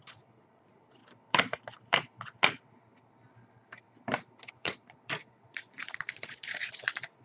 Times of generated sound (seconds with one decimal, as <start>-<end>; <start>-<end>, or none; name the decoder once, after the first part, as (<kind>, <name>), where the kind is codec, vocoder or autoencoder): 0.0-1.0 (vocoder, Vocos); 4.5-7.2

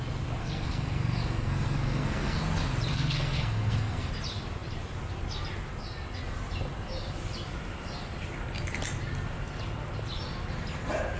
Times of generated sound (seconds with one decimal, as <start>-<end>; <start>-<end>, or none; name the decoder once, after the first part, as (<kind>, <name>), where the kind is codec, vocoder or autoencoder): 0.4-2.4 (codec, SNAC); 2.9-4.1